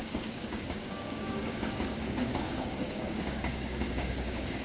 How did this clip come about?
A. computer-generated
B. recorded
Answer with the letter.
A